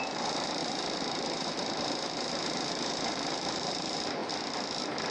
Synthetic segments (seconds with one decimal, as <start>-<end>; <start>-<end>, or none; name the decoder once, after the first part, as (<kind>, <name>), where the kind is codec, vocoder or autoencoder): 0.0-4.2 (vocoder, BigVGAN v2)